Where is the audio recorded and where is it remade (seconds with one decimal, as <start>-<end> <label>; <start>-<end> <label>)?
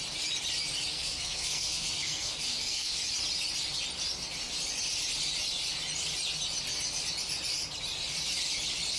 0.0-0.9 recorded; 0.9-3.0 remade; 3.0-9.0 recorded